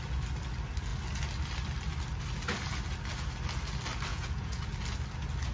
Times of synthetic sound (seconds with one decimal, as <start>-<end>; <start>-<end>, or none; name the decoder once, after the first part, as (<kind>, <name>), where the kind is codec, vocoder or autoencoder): 4.1-4.6 (vocoder, Vocos)